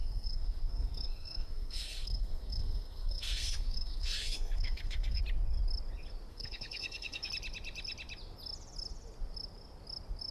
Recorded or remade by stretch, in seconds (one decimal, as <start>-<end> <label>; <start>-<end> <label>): 0.0-5.2 remade; 5.2-6.3 recorded; 6.3-7.3 remade; 7.3-10.3 recorded